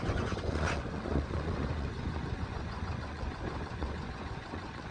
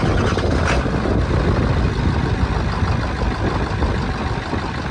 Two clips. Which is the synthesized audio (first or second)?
first